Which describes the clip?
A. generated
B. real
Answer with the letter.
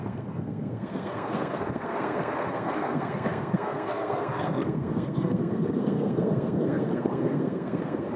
A